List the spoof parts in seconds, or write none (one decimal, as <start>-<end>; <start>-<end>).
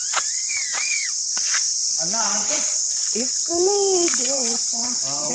0.0-5.3